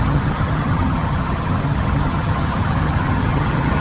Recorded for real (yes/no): no